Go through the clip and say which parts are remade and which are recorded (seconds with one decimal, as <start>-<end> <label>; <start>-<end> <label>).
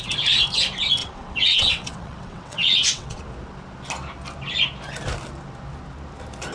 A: 0.0-1.0 recorded; 1.0-3.2 remade; 3.2-6.5 recorded